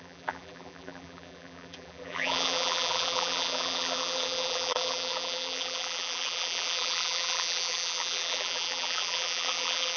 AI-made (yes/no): yes